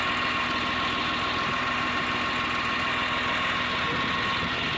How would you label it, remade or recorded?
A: recorded